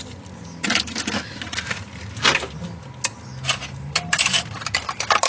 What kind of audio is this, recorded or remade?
recorded